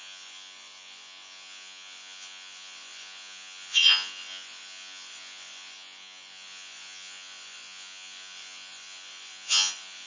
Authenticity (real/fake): fake